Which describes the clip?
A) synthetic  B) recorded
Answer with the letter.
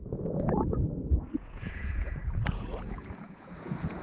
A